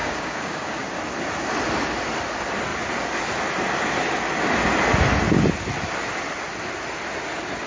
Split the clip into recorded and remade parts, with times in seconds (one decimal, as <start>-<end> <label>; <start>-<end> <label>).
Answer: 0.0-0.9 remade; 0.9-7.7 recorded